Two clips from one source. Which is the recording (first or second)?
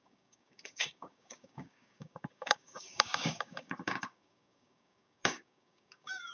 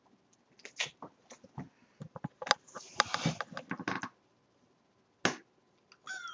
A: second